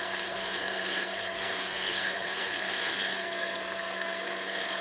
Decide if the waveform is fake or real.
fake